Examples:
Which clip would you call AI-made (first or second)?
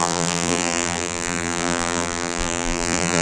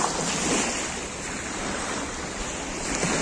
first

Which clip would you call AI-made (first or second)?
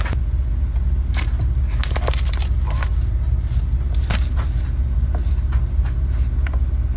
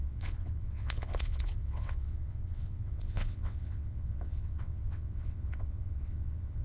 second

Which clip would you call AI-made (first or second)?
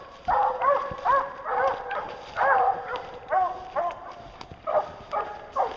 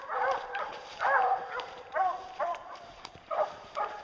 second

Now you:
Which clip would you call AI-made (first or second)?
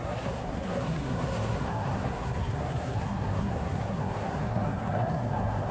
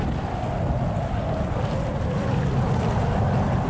first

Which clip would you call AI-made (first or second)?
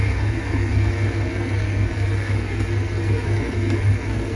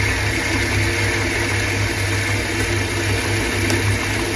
first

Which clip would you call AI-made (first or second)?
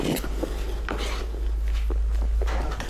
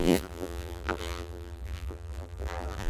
second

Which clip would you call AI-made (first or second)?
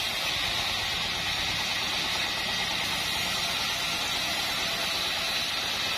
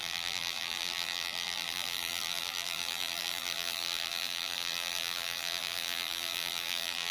second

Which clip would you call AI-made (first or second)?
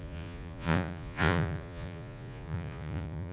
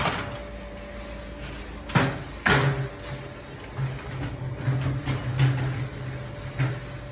first